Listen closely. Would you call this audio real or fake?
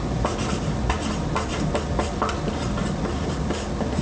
real